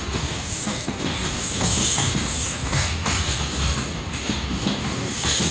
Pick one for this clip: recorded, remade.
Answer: remade